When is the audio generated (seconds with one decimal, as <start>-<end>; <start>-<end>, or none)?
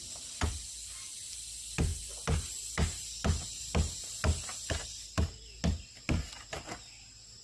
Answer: none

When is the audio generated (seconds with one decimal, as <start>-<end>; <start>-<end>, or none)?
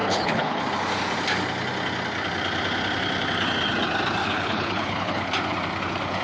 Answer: 0.0-0.6; 4.2-5.3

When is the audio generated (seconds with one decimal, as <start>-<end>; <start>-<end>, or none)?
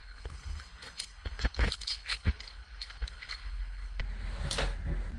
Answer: 0.0-4.0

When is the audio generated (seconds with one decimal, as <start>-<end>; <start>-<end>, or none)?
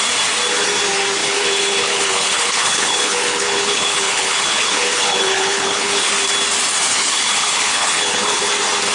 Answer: 1.2-6.1; 6.9-8.5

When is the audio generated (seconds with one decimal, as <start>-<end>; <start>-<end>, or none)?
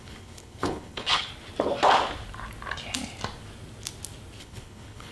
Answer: 0.0-1.3; 4.4-5.1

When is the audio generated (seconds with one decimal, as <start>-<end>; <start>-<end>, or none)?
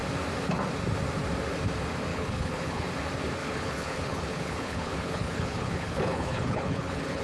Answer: 2.1-2.9; 3.4-7.2